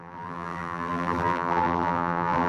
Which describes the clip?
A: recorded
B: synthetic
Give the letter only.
B